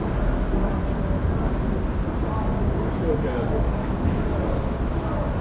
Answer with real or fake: real